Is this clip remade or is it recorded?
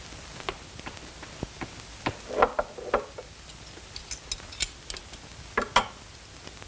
recorded